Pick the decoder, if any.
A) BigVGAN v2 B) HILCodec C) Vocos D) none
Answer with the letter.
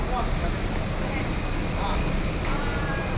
D